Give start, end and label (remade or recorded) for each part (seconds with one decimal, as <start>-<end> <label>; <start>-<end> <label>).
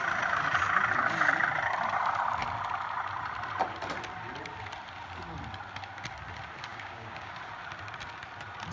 0.0-6.7 recorded; 6.7-7.3 remade; 7.3-8.7 recorded